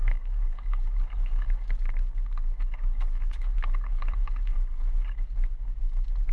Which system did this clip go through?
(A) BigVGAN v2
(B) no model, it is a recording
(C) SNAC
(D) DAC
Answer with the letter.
D